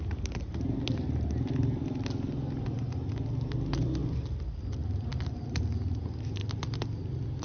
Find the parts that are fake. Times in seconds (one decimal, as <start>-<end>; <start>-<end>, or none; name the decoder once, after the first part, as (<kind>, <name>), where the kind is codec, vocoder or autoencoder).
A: 5.1-6.0 (vocoder, BigVGAN v2)